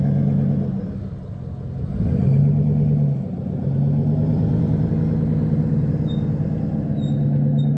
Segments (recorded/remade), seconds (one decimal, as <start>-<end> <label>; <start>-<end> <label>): 0.0-4.0 recorded; 4.0-4.9 remade; 4.9-7.8 recorded